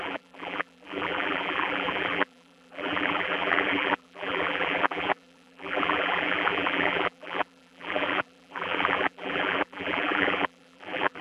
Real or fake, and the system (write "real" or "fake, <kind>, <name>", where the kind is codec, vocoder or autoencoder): fake, vocoder, BigVGAN v2